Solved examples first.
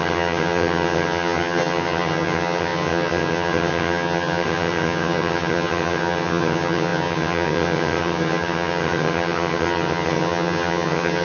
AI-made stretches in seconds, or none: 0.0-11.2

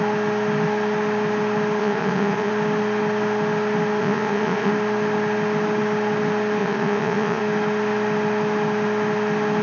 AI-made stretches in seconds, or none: 1.8-2.5; 4.0-4.7; 6.6-7.4

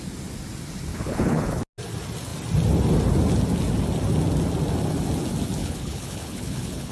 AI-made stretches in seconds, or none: 0.9-1.6; 5.6-6.9

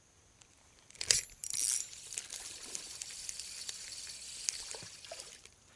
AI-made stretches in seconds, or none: none

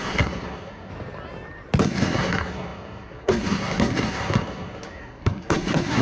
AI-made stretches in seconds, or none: 0.0-0.9; 1.8-6.0